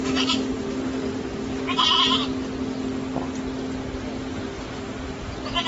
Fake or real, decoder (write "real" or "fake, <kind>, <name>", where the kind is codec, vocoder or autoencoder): real